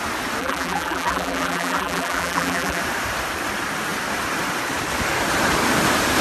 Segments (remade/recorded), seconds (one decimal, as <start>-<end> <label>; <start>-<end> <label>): 0.0-0.4 recorded; 0.4-2.8 remade; 2.8-6.2 recorded